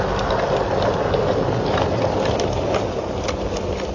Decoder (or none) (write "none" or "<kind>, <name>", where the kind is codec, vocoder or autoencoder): none